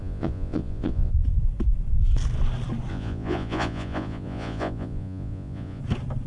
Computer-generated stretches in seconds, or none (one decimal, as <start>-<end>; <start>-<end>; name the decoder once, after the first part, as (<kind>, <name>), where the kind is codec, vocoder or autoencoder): 0.0-1.1 (vocoder, Vocos); 2.9-5.8